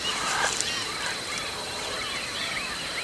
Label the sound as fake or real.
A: real